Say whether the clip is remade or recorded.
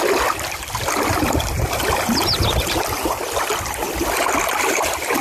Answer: recorded